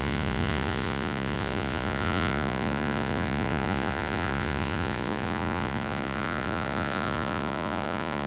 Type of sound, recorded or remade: remade